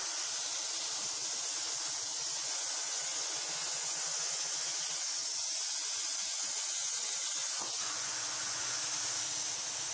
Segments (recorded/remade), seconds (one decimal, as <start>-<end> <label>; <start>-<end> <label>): 0.0-2.1 recorded; 2.1-4.8 remade; 4.8-5.2 recorded; 5.2-8.8 remade; 8.8-9.9 recorded